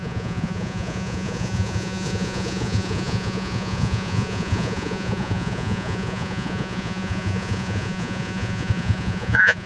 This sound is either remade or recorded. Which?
remade